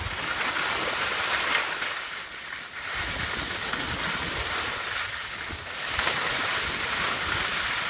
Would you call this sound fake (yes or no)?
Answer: no